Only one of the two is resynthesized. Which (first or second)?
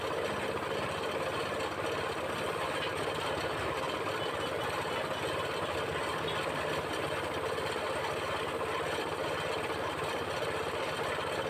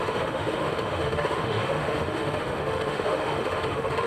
second